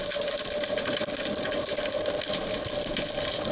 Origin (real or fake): real